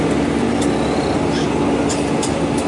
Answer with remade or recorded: recorded